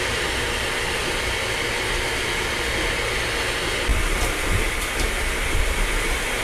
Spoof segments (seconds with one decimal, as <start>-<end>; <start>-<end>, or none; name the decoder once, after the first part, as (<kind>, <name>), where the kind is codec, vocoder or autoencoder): none